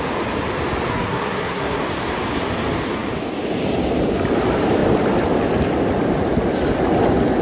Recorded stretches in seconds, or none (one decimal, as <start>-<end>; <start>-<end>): 0.0-0.9; 1.8-7.4